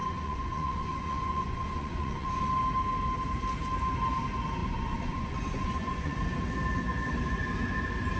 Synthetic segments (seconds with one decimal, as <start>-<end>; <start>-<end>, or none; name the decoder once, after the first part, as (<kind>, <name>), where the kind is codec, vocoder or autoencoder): 0.0-2.5 (vocoder, Vocos); 4.6-6.2